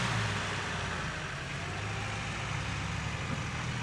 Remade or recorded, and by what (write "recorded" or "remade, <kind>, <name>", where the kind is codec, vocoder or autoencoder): recorded